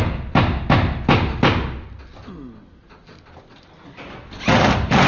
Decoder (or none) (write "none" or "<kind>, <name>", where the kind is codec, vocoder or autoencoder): none